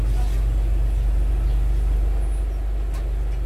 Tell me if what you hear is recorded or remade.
recorded